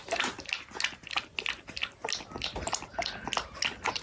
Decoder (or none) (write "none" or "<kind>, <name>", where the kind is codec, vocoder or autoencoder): none